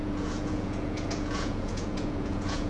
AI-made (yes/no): yes